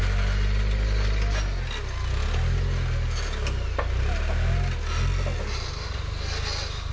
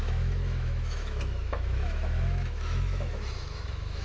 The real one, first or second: first